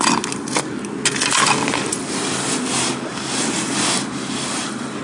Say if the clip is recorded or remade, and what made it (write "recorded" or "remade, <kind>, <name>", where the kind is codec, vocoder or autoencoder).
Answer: recorded